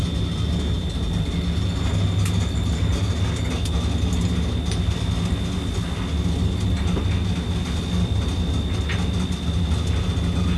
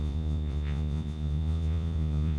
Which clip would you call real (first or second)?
first